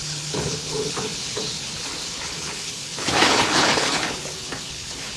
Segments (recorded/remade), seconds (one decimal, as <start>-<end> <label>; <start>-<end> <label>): 0.0-5.2 remade